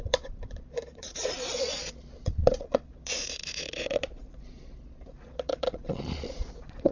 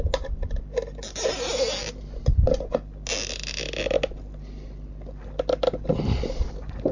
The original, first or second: second